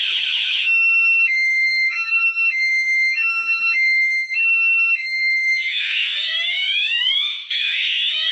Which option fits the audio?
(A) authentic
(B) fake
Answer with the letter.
B